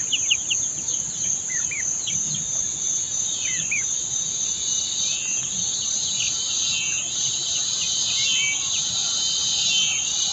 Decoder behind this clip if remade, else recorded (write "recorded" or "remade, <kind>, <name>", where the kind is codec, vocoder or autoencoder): recorded